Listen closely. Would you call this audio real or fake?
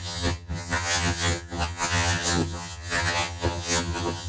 fake